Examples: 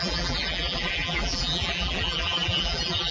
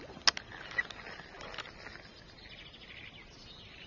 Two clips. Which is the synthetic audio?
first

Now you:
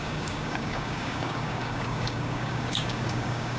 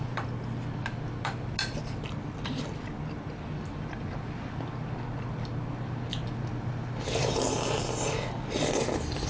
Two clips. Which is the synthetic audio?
first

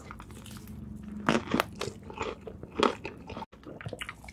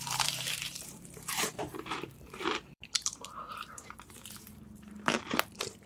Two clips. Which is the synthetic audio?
second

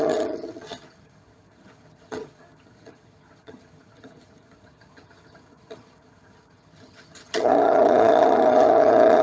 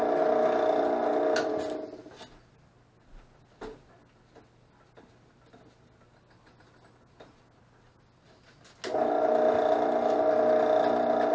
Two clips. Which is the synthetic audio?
first